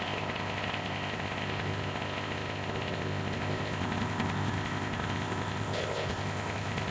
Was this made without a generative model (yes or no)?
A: no